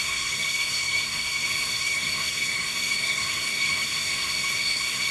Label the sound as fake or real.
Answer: fake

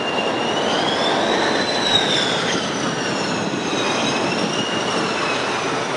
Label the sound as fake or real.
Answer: real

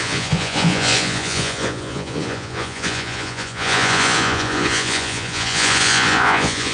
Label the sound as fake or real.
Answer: fake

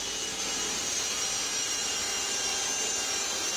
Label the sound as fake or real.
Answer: real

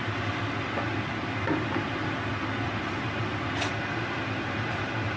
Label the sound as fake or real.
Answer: real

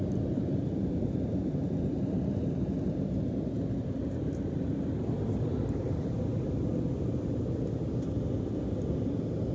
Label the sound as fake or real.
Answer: real